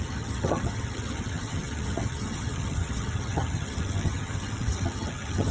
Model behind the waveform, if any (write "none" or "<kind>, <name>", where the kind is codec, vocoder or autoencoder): vocoder, HiFi-GAN